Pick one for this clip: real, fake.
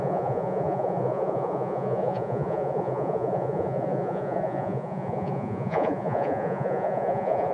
fake